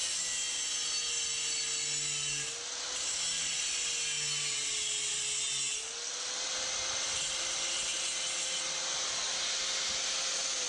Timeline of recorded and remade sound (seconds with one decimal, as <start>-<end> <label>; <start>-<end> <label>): 0.0-10.7 recorded